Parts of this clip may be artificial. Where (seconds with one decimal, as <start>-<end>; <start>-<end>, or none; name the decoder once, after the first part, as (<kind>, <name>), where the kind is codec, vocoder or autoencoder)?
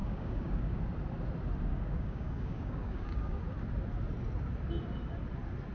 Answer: 0.0-0.8 (codec, DAC); 1.7-3.4